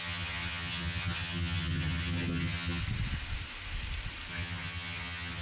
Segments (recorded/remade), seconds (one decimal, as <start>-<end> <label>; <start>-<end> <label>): 0.0-2.8 remade; 2.8-4.3 recorded; 4.3-5.4 remade